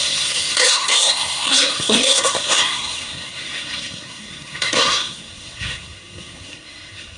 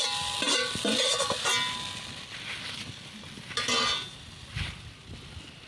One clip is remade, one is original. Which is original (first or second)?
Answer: second